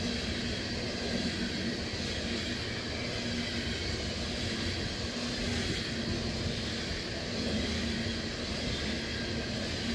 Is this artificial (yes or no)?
no